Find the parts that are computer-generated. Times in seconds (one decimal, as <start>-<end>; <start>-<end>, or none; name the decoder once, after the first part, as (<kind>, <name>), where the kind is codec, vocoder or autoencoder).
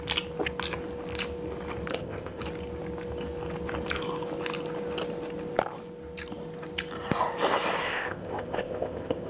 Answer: 1.9-2.4 (codec, ZipCodec); 7.8-9.3